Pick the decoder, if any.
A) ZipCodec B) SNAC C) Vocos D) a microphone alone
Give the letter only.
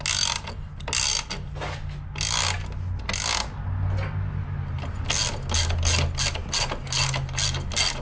D